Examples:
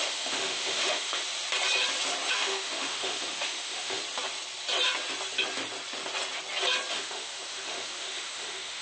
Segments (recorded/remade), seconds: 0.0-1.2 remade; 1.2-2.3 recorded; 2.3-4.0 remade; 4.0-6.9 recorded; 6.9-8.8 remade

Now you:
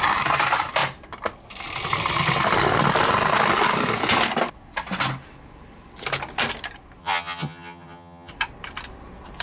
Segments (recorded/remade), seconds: 0.0-7.0 recorded; 7.0-8.3 remade; 8.3-9.4 recorded

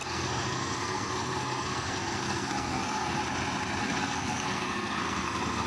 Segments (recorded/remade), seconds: 0.0-3.2 remade; 3.2-3.8 recorded; 3.8-5.7 remade

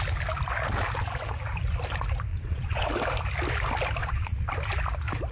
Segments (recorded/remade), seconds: 0.0-2.3 recorded; 2.3-2.9 remade; 2.9-4.0 recorded; 4.0-4.5 remade; 4.5-5.3 recorded

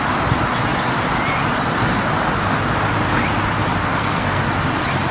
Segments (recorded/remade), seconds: 0.0-3.8 recorded; 3.8-4.4 remade; 4.4-5.1 recorded